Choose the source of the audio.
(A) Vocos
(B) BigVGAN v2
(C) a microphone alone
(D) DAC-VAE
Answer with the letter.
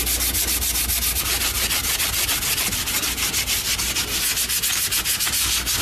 C